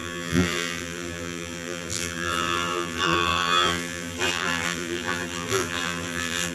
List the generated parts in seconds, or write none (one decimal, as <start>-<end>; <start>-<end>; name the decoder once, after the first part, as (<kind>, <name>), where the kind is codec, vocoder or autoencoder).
0.0-6.5 (vocoder, BigVGAN v2)